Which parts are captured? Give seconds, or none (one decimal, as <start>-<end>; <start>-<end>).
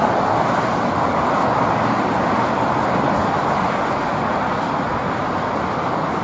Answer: 0.0-6.2